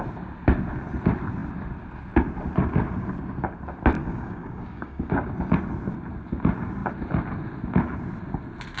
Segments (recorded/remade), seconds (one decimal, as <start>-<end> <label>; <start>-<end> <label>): 0.0-4.0 recorded; 4.0-5.3 remade; 5.3-8.8 recorded